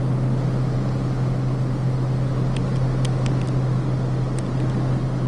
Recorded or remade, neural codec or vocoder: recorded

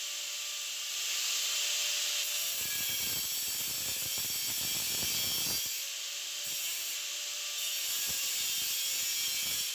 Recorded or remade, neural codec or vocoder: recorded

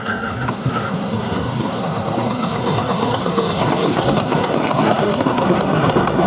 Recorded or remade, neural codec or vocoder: remade, codec, SNAC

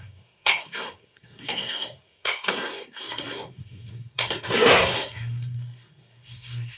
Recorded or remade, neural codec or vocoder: remade, codec, SNAC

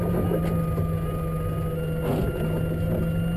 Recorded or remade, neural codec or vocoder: recorded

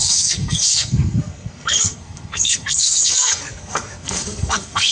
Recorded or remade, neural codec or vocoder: remade, codec, SNAC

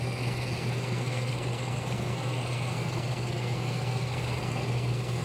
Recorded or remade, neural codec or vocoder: remade, codec, SNAC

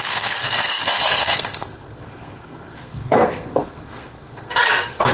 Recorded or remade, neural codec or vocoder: remade, codec, SNAC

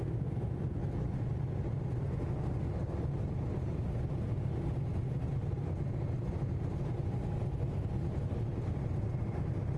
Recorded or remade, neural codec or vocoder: recorded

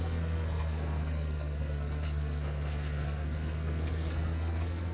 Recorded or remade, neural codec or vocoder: remade, codec, SNAC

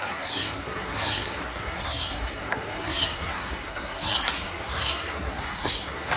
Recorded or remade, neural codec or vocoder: remade, codec, SNAC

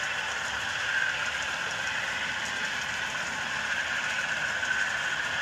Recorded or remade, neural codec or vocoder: recorded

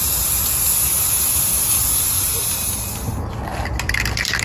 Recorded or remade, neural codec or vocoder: recorded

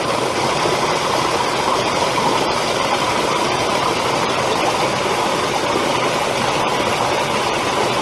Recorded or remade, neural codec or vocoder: recorded